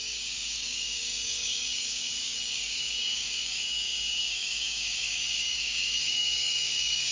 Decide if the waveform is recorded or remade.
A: remade